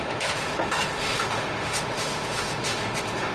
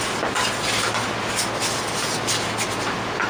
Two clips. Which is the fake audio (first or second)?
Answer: first